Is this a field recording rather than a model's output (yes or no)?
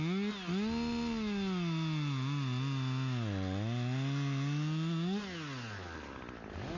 yes